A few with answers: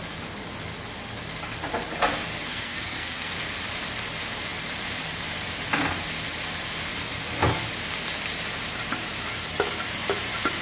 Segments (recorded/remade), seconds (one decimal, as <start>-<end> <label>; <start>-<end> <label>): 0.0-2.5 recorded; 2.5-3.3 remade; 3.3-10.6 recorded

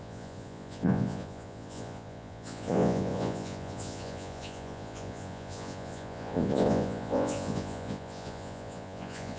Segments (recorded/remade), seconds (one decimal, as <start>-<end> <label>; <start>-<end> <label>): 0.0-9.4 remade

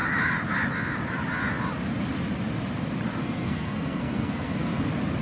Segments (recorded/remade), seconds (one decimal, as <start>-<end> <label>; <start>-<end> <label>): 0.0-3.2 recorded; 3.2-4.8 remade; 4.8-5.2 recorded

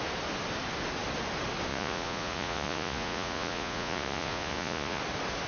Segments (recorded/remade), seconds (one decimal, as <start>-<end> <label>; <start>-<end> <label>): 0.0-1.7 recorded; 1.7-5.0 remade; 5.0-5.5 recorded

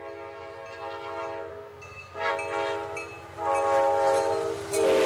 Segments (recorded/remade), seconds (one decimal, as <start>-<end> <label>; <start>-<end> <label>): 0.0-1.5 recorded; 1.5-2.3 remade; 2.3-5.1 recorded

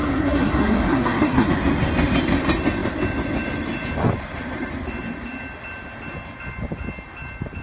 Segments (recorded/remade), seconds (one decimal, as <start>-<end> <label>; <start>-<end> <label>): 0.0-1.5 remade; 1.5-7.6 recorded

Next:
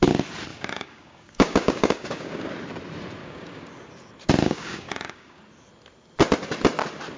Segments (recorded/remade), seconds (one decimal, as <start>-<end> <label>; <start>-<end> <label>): 0.0-0.5 recorded; 0.5-2.5 remade; 2.5-3.2 recorded; 3.2-3.7 remade; 3.7-4.4 recorded; 4.4-5.4 remade; 5.4-7.2 recorded

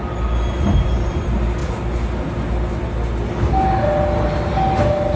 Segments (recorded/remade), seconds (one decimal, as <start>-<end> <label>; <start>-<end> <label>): 0.0-5.2 recorded